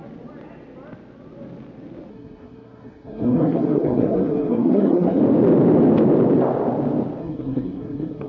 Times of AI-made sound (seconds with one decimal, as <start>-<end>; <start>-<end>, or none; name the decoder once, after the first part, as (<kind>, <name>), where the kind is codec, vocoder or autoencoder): 2.1-5.2 (codec, SNAC); 7.2-8.3

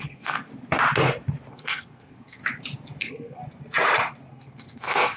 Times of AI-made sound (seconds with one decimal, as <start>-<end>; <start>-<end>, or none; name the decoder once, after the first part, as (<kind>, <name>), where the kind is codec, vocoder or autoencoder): 0.0-0.5 (codec, SNAC); 1.5-2.4; 3.0-3.4; 4.3-5.2

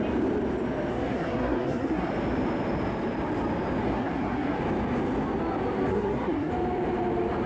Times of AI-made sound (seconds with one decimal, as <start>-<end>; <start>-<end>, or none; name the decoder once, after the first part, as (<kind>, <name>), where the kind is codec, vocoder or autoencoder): 0.9-2.1 (codec, SNAC); 3.8-4.6; 5.9-6.5